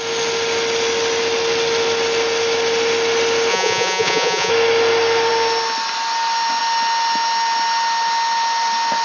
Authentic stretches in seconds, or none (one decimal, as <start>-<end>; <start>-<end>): 0.0-3.5; 4.5-9.0